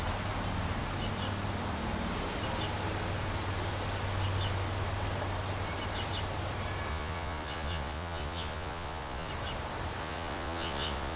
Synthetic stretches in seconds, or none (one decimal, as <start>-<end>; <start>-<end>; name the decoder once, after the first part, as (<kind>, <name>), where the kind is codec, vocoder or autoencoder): 6.9-9.3 (vocoder, Vocos); 10.0-11.2